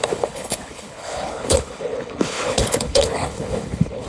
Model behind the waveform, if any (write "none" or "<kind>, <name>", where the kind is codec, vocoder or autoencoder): codec, HILCodec